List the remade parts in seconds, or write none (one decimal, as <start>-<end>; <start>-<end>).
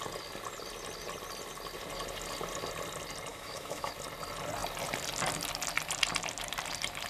3.3-3.9